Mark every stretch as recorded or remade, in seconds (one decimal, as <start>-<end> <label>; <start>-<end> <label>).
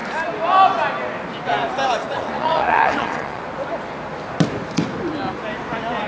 0.0-2.0 recorded; 2.0-3.4 remade; 3.4-6.1 recorded